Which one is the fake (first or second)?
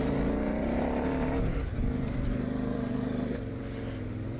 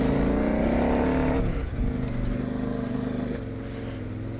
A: first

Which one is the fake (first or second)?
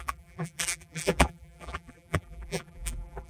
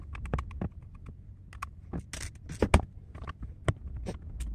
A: first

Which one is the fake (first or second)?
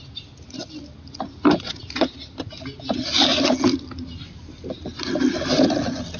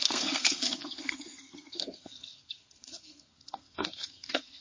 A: second